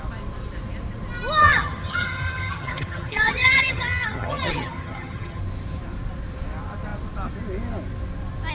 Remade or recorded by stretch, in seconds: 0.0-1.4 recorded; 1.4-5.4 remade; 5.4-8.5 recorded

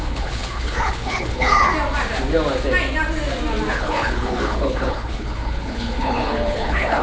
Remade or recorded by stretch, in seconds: 0.0-1.7 remade; 1.7-3.7 recorded; 3.7-7.0 remade

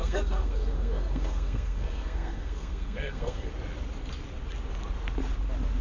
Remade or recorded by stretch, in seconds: 0.0-3.5 remade; 3.5-5.8 recorded